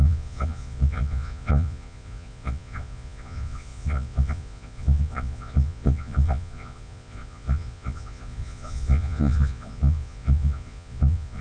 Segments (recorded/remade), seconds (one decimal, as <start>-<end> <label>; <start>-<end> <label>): 0.0-11.4 remade